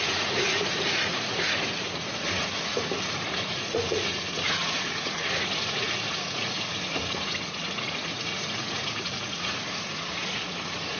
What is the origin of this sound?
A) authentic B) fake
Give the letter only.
B